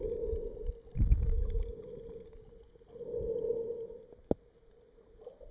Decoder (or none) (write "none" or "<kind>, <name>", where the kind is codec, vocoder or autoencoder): none